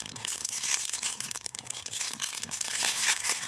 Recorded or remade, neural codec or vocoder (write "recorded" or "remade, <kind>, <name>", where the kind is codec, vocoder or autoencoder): remade, codec, SNAC